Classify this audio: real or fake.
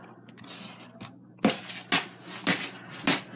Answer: real